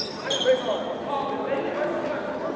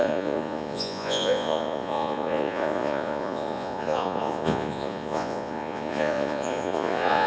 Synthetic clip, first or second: second